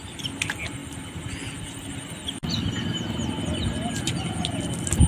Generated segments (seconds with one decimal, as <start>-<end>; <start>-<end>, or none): none